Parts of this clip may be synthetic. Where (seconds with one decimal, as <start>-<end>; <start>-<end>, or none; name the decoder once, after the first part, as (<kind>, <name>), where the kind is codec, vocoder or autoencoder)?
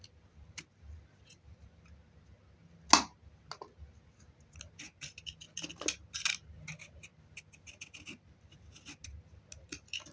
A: none